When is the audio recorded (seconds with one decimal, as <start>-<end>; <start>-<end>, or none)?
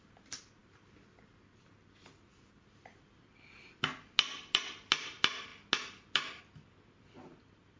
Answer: 0.0-7.8